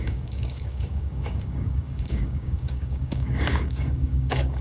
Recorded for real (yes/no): no